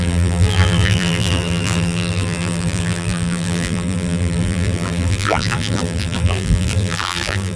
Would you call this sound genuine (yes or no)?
no